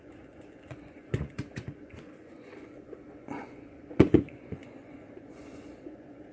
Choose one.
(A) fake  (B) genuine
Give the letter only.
A